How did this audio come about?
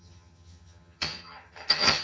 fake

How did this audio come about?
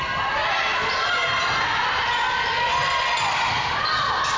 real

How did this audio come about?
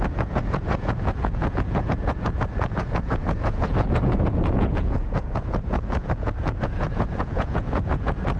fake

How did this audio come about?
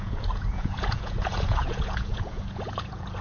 fake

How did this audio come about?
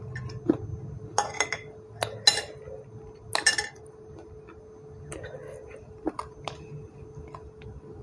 real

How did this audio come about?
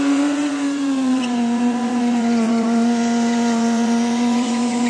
fake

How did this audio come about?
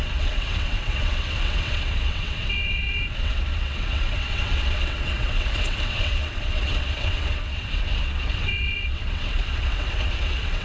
fake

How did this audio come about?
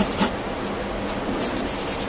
real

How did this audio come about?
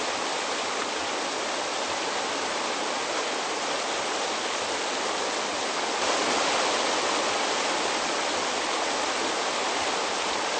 real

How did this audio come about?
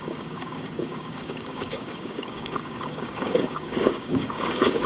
fake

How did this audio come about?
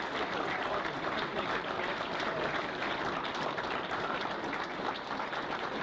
fake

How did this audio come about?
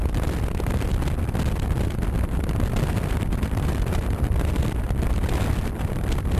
fake